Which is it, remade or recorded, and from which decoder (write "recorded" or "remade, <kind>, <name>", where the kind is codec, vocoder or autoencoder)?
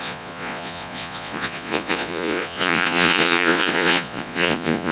remade, vocoder, Vocos